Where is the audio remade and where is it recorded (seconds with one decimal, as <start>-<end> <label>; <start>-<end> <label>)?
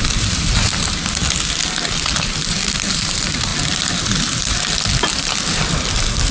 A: 0.0-1.2 remade; 1.2-1.9 recorded; 1.9-3.5 remade; 3.5-4.1 recorded; 4.1-6.3 remade